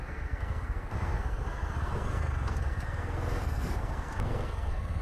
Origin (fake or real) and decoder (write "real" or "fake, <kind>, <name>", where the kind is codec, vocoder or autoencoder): fake, codec, SNAC